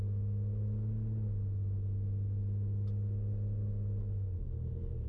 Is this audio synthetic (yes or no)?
no